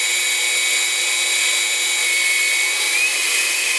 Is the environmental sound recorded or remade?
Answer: recorded